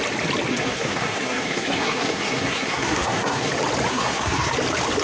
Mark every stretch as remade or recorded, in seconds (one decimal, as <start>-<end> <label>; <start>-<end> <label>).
0.0-0.5 recorded; 0.5-3.5 remade; 3.5-3.9 recorded; 3.9-4.5 remade; 4.5-5.0 recorded